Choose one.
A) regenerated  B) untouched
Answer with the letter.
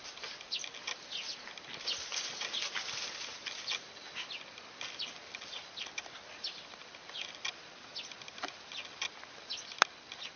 B